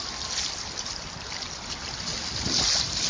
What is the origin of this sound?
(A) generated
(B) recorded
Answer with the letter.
B